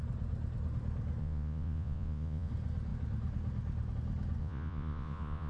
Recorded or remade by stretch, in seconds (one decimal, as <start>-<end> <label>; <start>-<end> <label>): 0.0-1.2 recorded; 1.2-2.5 remade; 2.5-4.4 recorded; 4.4-5.5 remade